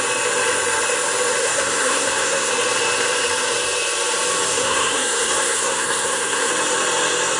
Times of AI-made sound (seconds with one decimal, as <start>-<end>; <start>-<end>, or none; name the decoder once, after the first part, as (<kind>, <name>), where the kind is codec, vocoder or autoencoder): 1.4-2.5 (codec, SNAC); 4.5-6.5